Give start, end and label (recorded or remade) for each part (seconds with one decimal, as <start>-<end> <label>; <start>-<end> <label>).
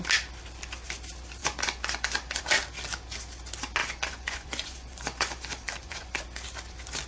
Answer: 0.0-1.4 recorded; 1.4-2.4 remade; 2.4-3.8 recorded; 3.8-6.2 remade; 6.2-7.1 recorded